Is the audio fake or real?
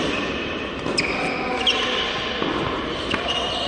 real